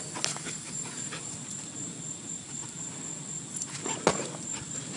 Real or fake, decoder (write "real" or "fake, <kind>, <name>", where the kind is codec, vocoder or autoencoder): real